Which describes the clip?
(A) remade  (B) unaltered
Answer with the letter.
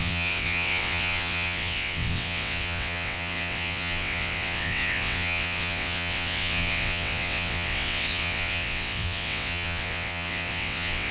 A